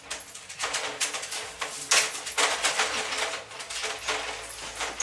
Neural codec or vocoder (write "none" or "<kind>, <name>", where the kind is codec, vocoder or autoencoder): none